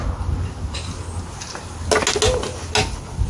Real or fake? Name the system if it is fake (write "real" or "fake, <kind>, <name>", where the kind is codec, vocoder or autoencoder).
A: real